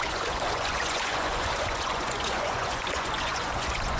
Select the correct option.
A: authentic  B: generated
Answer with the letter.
B